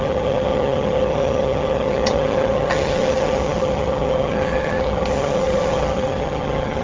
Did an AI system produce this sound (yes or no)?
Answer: yes